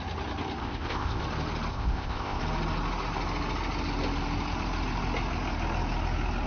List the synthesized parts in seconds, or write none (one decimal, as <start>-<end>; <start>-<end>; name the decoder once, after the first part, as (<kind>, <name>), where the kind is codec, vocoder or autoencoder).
0.6-1.2 (codec, ZipCodec); 1.7-2.4